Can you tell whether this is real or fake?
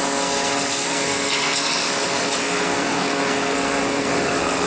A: fake